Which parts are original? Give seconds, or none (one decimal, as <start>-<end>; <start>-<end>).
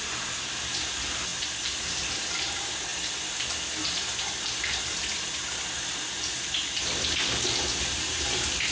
0.0-8.7